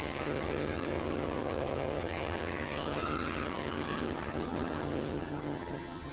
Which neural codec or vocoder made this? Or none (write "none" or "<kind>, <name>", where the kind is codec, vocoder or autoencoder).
vocoder, HiFi-GAN